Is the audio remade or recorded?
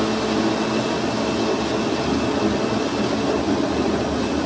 recorded